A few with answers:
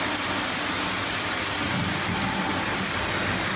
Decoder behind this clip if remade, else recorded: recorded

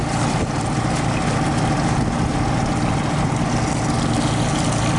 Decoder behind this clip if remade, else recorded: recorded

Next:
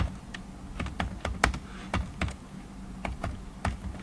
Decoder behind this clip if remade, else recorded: recorded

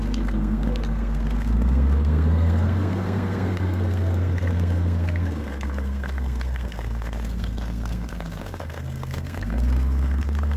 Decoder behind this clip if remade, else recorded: remade, codec, SNAC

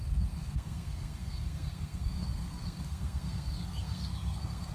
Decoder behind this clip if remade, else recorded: remade, codec, SNAC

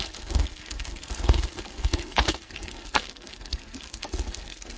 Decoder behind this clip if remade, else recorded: remade, codec, SNAC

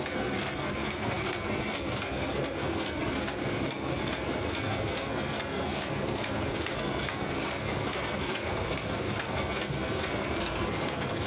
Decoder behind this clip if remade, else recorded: remade, codec, SNAC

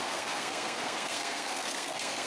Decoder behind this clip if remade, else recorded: remade, codec, SNAC